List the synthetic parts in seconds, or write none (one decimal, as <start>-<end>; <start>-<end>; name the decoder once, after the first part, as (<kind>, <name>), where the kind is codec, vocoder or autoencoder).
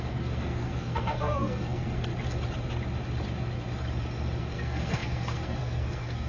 0.0-2.1 (codec, SNAC); 4.4-6.3